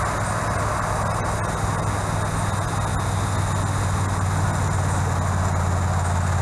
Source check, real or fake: real